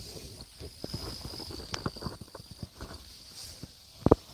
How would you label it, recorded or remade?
recorded